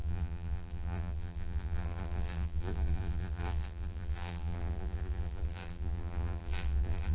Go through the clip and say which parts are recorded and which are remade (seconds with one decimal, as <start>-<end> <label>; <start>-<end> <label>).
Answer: 0.0-7.1 remade